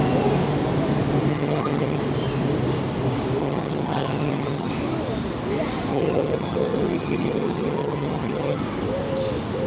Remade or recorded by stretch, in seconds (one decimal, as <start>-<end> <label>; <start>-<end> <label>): 0.0-1.3 recorded; 1.3-2.0 remade; 2.0-3.4 recorded; 3.4-4.7 remade; 4.7-5.9 recorded; 5.9-8.6 remade; 8.6-9.7 recorded